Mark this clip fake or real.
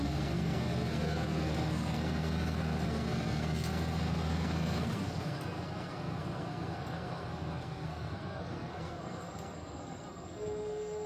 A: fake